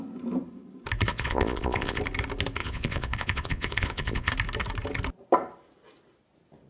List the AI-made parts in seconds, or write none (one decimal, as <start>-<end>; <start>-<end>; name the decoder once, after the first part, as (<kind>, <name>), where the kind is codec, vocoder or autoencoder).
1.1-2.0 (vocoder, Vocos); 2.6-4.3